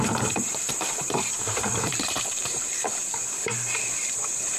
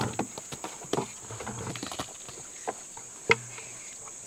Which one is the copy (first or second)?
first